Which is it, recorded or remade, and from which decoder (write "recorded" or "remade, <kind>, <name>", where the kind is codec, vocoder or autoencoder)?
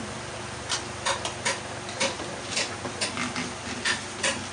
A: recorded